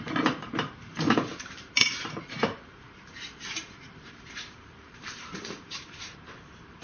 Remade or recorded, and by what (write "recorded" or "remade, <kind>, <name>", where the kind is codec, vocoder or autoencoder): remade, vocoder, BigVGAN v2